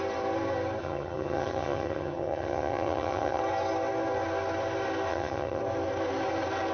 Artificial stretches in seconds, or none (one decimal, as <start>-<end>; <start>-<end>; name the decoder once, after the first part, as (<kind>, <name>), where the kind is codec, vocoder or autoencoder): 0.8-3.4 (vocoder, HiFi-GAN); 5.1-5.6